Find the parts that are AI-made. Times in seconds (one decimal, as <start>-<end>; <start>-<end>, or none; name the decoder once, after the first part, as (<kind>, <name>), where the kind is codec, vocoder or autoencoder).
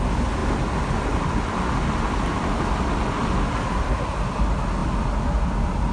none